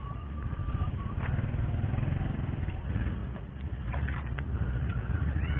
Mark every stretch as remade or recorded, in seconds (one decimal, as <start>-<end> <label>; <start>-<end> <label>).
0.0-0.6 remade; 0.6-2.8 recorded; 2.8-5.6 remade